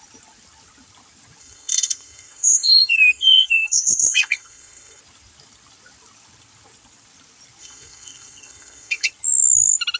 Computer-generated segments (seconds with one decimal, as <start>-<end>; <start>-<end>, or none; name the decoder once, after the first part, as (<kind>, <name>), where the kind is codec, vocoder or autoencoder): 1.4-5.0 (codec, SNAC); 7.6-9.1

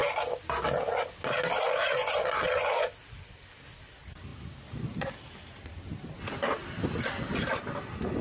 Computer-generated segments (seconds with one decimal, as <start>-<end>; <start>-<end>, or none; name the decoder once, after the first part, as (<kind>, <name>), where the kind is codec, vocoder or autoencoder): none

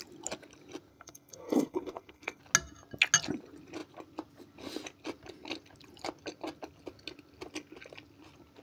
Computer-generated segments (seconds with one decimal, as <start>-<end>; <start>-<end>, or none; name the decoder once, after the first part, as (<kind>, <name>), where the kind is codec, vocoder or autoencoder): 0.9-2.4 (codec, SNAC)

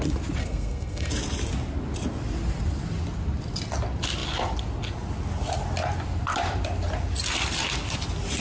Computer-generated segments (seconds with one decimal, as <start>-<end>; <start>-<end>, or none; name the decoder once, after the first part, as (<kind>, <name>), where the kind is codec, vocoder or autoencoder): 0.4-1.1 (codec, SNAC)

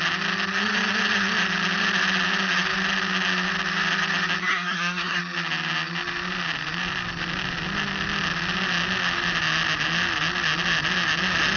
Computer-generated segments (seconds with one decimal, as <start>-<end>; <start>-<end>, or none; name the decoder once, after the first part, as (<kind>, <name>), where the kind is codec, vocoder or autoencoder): 4.4-5.2 (codec, SNAC)